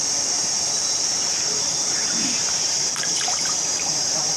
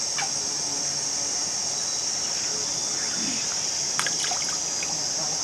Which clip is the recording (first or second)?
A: second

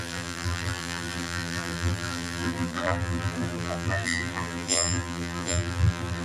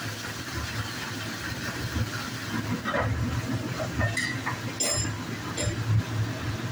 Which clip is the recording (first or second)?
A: second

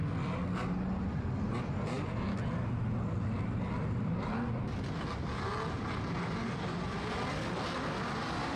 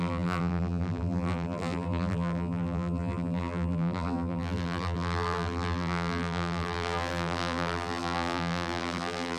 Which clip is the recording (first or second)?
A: first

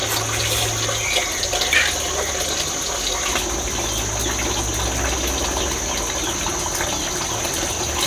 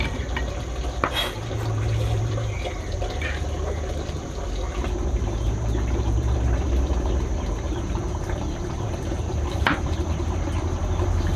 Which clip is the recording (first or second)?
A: first